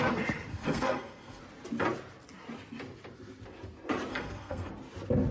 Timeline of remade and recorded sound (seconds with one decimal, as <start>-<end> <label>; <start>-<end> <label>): 0.0-0.5 recorded; 0.5-1.4 remade; 1.4-4.1 recorded; 4.1-4.7 remade; 4.7-5.3 recorded